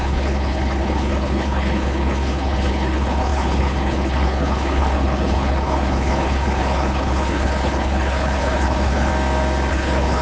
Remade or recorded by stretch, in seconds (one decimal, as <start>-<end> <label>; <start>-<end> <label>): 0.0-9.1 remade; 9.1-9.7 recorded; 9.7-10.2 remade